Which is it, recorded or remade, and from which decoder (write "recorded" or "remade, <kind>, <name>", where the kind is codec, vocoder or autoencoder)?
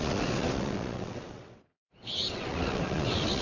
remade, vocoder, WaveNeXt